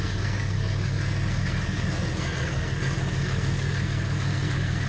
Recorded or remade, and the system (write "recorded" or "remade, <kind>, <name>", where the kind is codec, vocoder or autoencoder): remade, codec, SNAC